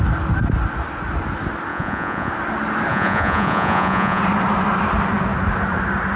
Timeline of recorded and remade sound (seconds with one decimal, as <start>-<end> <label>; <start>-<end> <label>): 0.0-1.7 recorded; 1.7-2.3 remade; 2.3-2.9 recorded; 2.9-4.2 remade; 4.2-6.2 recorded

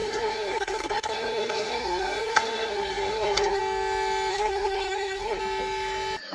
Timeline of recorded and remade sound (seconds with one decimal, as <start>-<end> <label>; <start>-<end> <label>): 0.0-3.6 remade; 3.6-4.3 recorded; 4.3-5.4 remade; 5.4-6.3 recorded

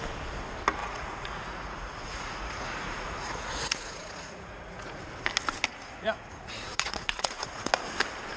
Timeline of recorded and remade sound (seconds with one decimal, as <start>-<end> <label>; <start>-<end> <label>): 0.0-0.8 recorded; 0.8-5.0 remade; 5.0-5.7 recorded; 5.7-7.7 remade; 7.7-8.4 recorded

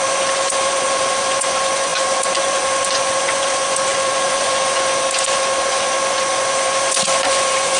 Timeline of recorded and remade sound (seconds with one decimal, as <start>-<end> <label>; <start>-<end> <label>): 0.0-7.8 remade

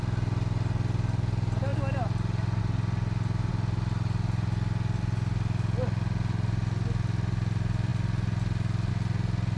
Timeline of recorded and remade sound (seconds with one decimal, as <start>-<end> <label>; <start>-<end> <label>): 0.0-9.6 recorded

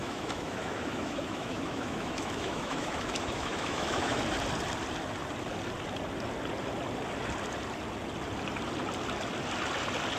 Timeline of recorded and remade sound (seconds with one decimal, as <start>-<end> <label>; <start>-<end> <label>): 0.0-4.2 remade; 4.2-10.2 recorded